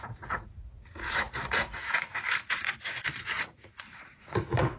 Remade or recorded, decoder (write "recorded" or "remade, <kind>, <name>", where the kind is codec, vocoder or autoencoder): remade, vocoder, Vocos